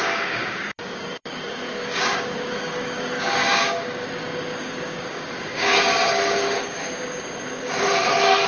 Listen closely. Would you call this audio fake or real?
fake